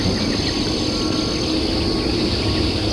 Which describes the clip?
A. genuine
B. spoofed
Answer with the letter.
A